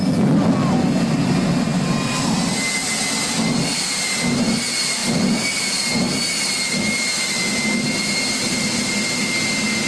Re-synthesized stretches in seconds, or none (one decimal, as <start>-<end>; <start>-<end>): none